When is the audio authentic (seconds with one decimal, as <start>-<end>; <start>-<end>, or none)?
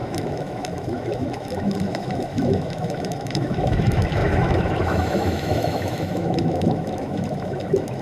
none